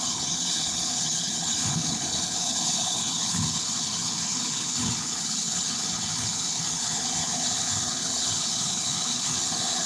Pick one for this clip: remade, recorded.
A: remade